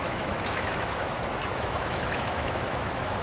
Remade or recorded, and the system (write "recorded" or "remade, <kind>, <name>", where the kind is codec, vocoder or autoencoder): remade, autoencoder, DAC-VAE